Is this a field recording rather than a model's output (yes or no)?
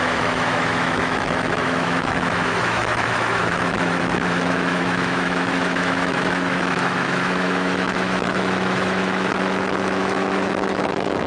no